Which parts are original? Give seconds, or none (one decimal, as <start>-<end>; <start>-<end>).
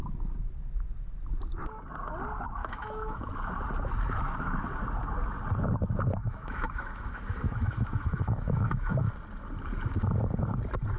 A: 0.0-2.6; 3.3-6.2; 9.0-11.0